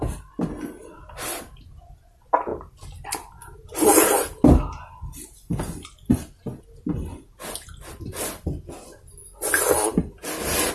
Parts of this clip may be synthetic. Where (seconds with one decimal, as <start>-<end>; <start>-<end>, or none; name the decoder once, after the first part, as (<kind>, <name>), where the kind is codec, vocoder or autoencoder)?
none